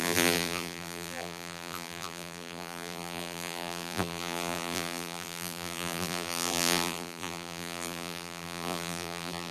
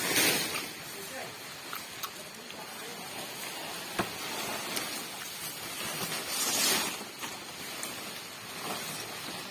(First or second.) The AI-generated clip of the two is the first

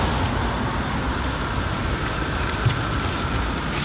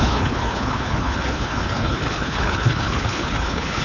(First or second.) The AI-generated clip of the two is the second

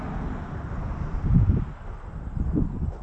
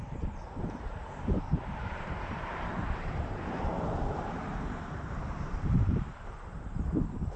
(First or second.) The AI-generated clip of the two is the second